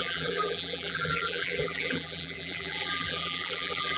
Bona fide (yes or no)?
no